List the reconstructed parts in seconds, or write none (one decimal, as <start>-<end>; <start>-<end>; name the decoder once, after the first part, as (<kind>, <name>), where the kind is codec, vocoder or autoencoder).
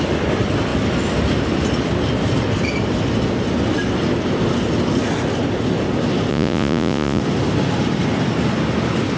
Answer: 6.3-7.2 (vocoder, Vocos)